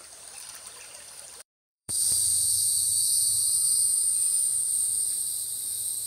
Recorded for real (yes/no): no